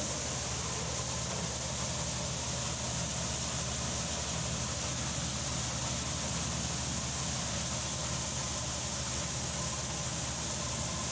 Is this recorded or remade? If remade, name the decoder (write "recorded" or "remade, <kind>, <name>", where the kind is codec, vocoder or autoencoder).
recorded